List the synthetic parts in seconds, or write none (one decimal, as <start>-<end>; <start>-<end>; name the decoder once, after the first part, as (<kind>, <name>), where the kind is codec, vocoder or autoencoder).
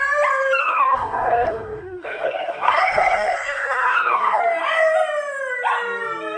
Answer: 0.6-4.4 (codec, SNAC)